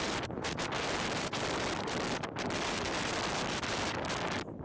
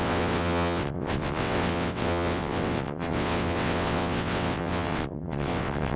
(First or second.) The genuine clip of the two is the first